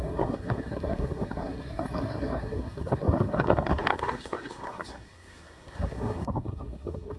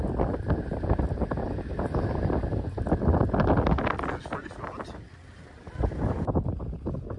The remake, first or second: first